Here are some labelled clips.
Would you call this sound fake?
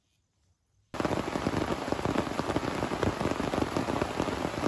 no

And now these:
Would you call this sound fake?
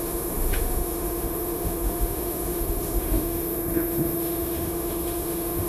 yes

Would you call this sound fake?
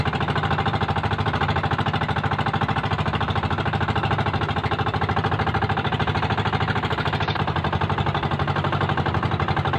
no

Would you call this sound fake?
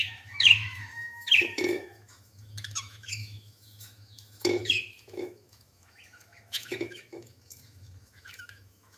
yes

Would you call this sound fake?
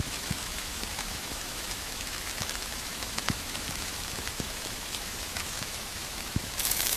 yes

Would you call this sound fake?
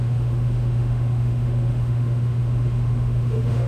yes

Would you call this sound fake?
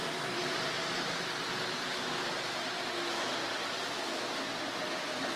no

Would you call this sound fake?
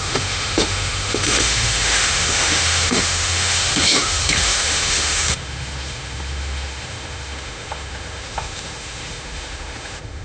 yes